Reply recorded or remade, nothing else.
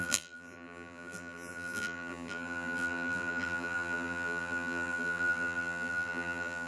remade